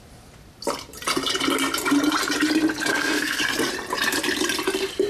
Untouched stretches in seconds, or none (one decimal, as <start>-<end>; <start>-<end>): 0.0-2.9; 3.4-5.1